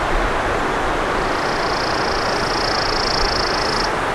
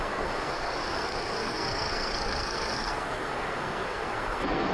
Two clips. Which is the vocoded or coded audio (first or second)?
second